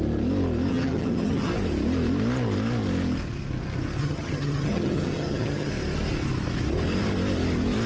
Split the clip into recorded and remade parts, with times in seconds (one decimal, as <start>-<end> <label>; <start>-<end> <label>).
0.0-0.7 recorded; 0.7-1.5 remade; 1.5-4.0 recorded; 4.0-5.7 remade; 5.7-7.9 recorded